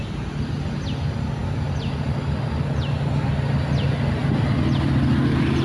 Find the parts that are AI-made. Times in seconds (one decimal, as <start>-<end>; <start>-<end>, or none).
none